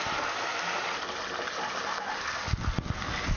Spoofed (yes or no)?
no